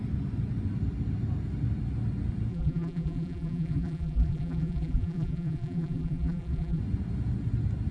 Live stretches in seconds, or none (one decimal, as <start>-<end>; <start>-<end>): 0.0-2.5; 6.8-7.9